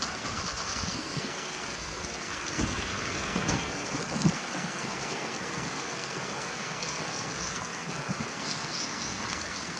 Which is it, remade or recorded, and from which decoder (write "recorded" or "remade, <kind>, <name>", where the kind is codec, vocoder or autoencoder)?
remade, codec, SNAC